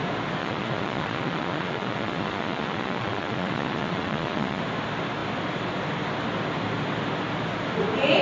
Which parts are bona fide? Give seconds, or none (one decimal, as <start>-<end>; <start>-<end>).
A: 0.0-0.4; 4.6-8.2